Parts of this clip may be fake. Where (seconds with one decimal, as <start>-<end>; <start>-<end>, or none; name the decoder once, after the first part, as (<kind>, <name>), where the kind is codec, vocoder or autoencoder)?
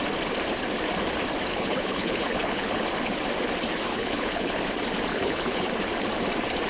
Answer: 1.5-2.8 (codec, HILCodec); 3.9-4.6; 5.1-5.7